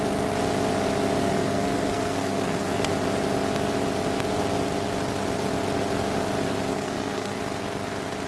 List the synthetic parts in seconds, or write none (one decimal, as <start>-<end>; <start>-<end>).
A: 1.2-2.9; 6.7-7.4